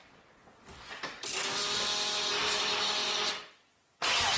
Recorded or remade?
recorded